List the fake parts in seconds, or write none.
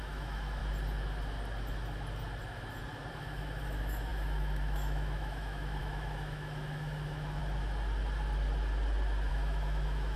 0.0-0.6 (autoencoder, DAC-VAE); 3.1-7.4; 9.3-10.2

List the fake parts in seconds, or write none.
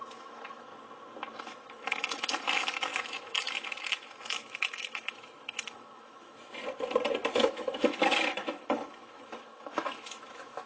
0.0-0.7 (autoencoder, DAC-VAE); 1.4-6.6; 7.3-10.7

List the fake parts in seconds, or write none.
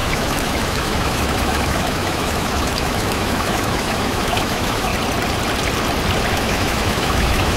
0.0-4.9 (autoencoder, DAC-VAE); 6.3-7.6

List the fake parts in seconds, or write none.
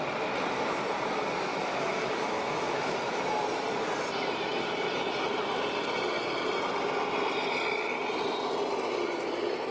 1.5-3.2 (autoencoder, DAC-VAE)